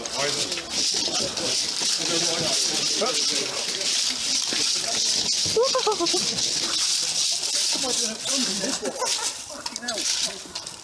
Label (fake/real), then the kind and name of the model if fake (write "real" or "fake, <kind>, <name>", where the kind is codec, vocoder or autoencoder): real